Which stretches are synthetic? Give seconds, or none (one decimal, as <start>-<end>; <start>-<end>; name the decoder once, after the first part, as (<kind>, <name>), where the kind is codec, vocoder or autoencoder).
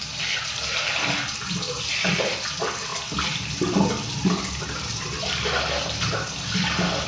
none